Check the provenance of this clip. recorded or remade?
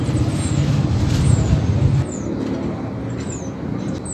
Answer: recorded